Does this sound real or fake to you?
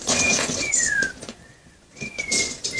fake